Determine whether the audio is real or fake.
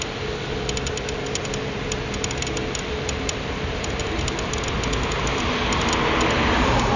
real